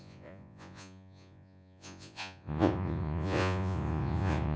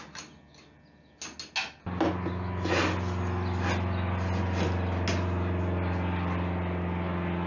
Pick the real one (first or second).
second